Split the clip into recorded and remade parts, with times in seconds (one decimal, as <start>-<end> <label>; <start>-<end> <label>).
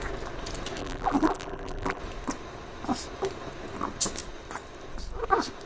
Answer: 0.0-0.8 recorded; 0.8-2.0 remade; 2.0-5.7 recorded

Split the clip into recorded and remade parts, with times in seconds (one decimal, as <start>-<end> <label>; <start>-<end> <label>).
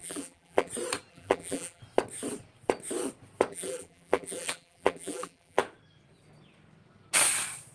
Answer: 0.0-0.7 remade; 0.7-1.1 recorded; 1.1-1.8 remade; 1.8-3.5 recorded; 3.5-5.6 remade; 5.6-7.7 recorded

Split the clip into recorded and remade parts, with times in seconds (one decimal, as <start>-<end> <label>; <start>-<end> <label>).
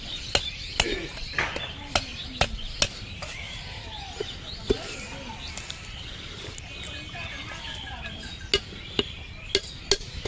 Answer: 0.0-10.3 recorded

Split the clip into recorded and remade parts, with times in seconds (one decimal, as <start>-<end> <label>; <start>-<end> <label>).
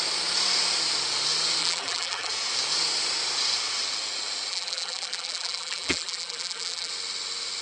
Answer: 0.0-1.6 recorded; 1.6-2.3 remade; 2.3-4.5 recorded; 4.5-6.9 remade; 6.9-7.6 recorded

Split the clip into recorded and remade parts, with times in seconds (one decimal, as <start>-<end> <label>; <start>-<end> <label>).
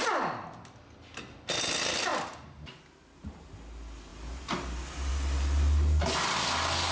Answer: 0.0-2.1 recorded; 2.1-2.8 remade; 2.8-6.9 recorded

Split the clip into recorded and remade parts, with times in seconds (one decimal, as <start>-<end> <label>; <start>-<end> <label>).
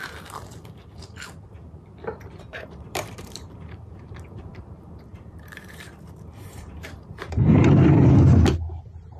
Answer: 0.0-2.5 recorded; 2.5-7.7 remade; 7.7-9.2 recorded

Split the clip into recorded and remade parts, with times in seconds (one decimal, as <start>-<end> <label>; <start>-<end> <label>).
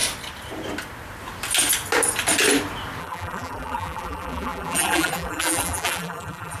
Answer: 0.0-3.0 recorded; 3.0-6.6 remade